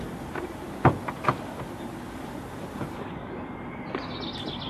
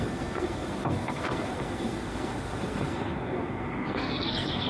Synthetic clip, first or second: second